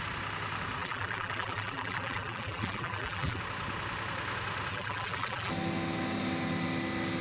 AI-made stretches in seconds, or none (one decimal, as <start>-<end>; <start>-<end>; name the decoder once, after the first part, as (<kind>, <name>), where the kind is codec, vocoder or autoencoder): 0.8-3.4 (vocoder, BigVGAN v2); 4.7-5.5